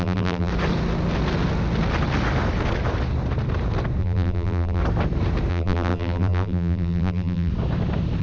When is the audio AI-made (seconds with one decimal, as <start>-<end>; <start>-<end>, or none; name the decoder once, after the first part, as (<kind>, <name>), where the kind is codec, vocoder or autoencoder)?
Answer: 0.0-0.5 (vocoder, BigVGAN v2); 4.0-4.8; 5.5-7.5